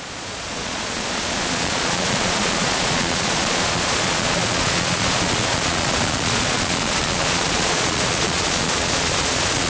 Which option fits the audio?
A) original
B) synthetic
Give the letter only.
B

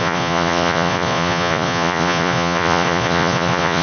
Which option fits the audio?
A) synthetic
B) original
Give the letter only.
A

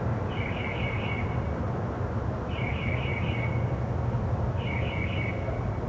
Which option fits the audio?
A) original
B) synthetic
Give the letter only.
A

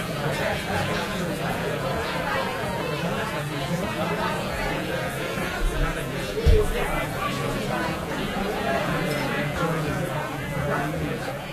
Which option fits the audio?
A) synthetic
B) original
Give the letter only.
A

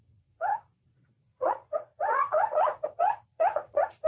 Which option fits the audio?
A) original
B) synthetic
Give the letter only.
B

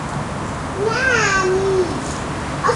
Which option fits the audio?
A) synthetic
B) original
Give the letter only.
B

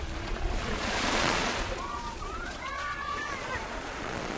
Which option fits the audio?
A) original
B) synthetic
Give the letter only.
B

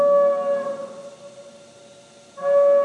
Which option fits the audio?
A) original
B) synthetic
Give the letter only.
A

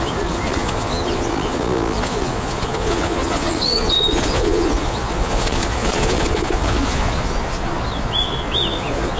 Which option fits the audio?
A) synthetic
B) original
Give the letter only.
A